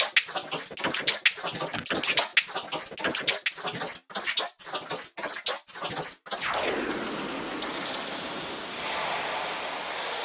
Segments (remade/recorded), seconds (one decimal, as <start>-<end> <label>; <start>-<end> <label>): 0.0-7.8 recorded; 7.8-8.3 remade; 8.3-10.2 recorded